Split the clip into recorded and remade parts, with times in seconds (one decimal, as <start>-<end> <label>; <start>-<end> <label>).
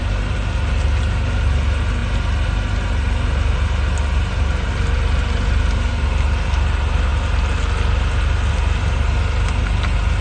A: 0.0-10.2 recorded